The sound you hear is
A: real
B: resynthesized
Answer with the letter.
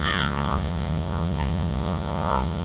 B